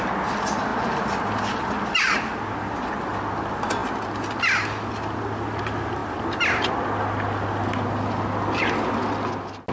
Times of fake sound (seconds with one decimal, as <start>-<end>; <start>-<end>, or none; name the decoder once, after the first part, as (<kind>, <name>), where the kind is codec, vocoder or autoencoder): none